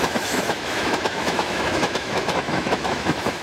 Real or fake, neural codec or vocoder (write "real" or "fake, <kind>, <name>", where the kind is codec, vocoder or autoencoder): fake, autoencoder, DAC-VAE